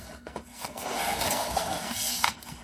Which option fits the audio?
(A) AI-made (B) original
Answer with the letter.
A